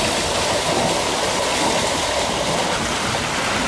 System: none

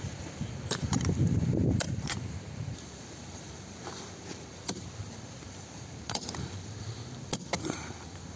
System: vocoder, BigVGAN v2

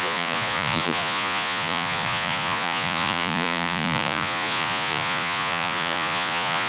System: vocoder, Vocos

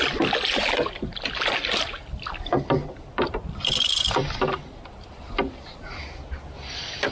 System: none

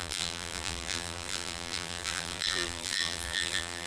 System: vocoder, BigVGAN v2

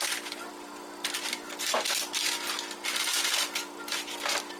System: none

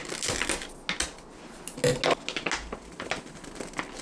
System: none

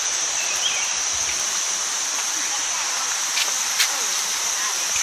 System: vocoder, BigVGAN v2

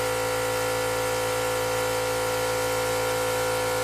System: none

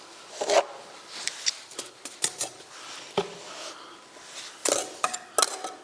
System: none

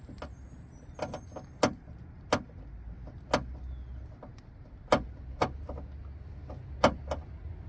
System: none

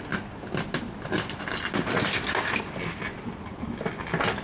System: none